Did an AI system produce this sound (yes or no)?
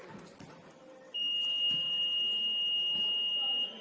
no